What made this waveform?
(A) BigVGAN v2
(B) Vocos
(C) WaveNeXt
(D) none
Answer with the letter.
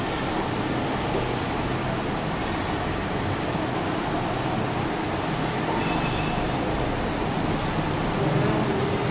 D